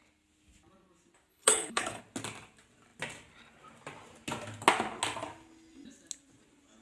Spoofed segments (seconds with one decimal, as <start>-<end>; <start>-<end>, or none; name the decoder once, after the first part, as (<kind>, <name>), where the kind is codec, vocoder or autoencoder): 1.3-2.0 (codec, HILCodec)